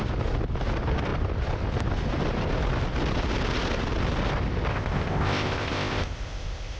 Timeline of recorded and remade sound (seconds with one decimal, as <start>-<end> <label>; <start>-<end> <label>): 0.0-4.7 recorded; 4.7-6.8 remade